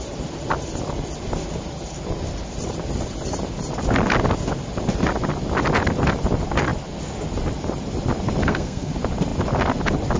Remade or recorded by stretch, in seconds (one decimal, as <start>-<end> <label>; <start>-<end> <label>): 0.0-8.4 recorded; 8.4-8.9 remade; 8.9-10.2 recorded